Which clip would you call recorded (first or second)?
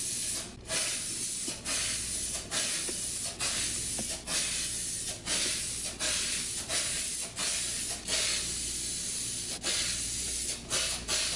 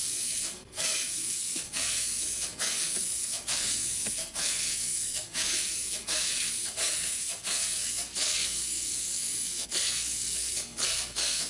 first